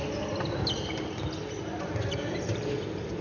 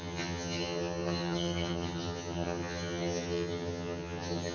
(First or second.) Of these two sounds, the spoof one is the second